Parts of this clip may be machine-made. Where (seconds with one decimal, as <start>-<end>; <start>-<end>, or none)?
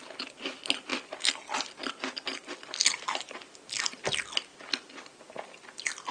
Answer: none